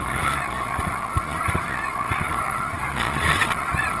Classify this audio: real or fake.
fake